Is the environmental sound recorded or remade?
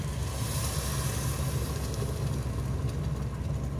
recorded